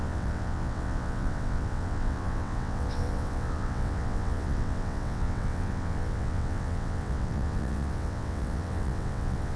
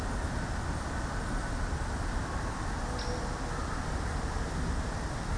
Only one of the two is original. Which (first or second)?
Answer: second